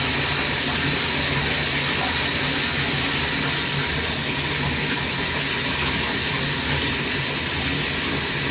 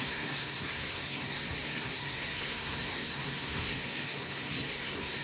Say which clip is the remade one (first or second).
second